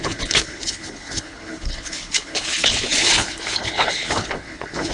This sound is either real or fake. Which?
fake